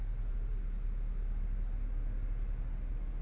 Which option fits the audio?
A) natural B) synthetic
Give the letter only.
A